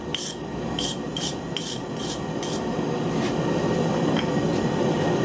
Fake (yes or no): no